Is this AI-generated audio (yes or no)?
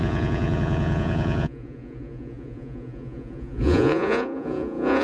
yes